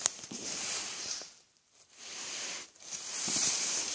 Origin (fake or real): fake